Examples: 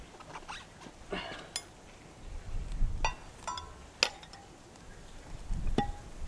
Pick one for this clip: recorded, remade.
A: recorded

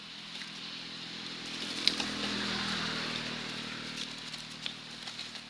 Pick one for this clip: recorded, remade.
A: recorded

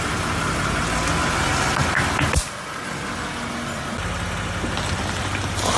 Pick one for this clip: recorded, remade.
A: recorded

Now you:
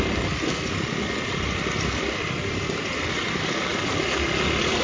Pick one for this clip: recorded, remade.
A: recorded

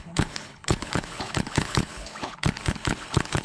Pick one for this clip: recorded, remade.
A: remade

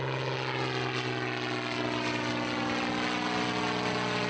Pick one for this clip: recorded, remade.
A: recorded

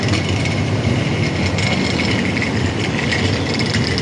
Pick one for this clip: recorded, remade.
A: recorded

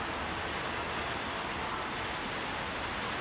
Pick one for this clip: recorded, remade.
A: recorded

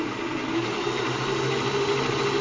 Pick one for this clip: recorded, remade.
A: recorded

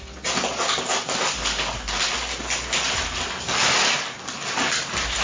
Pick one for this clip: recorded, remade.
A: recorded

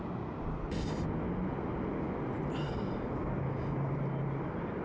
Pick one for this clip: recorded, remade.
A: recorded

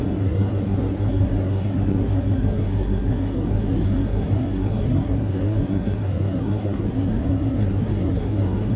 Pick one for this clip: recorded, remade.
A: remade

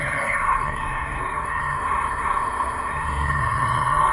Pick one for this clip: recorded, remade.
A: remade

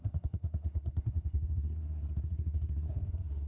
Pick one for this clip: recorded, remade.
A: remade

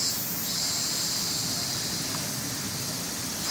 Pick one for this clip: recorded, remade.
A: recorded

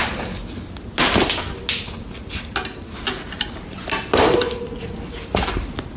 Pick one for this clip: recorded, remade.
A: recorded